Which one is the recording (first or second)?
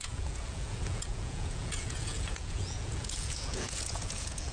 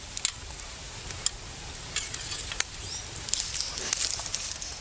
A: second